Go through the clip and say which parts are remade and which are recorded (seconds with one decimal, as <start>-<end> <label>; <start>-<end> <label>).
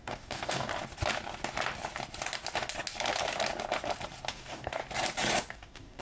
0.0-0.7 remade; 0.7-4.3 recorded; 4.3-4.8 remade; 4.8-5.5 recorded; 5.5-6.0 remade